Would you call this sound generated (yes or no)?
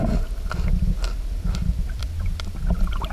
no